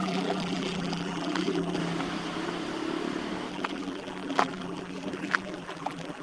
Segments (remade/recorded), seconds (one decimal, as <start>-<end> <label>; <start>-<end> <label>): 0.0-1.8 remade; 1.8-3.5 recorded; 3.5-6.2 remade